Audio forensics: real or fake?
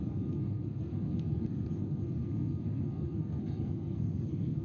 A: fake